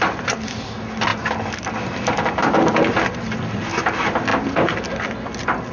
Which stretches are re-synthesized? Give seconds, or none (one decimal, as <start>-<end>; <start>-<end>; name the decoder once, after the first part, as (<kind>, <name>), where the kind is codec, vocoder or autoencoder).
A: none